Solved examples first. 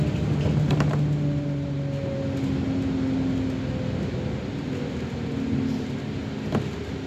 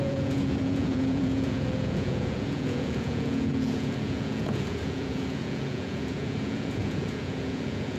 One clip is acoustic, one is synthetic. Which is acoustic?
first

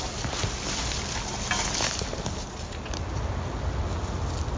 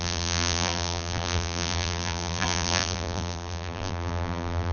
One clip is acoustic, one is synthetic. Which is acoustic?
first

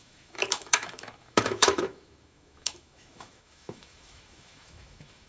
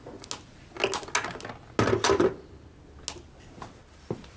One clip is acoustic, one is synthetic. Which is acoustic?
second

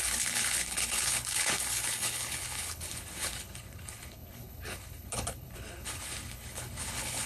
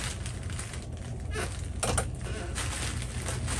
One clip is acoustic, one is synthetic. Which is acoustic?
second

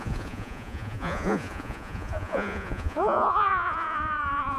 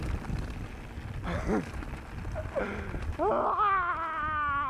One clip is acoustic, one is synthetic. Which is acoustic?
second